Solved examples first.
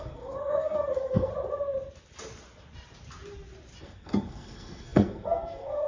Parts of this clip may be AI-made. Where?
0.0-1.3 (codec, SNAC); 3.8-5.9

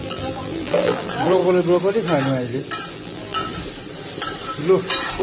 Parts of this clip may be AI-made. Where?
0.0-1.4 (vocoder, BigVGAN v2); 2.9-3.5

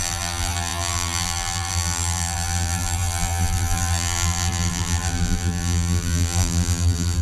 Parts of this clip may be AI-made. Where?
0.0-7.2 (vocoder, BigVGAN v2)

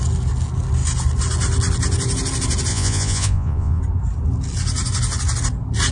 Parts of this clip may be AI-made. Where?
2.7-3.8 (vocoder, Vocos)